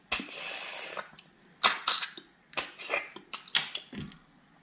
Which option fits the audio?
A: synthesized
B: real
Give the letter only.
B